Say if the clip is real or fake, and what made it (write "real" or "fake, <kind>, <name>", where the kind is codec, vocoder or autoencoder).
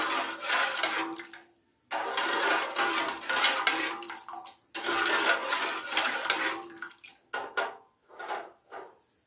real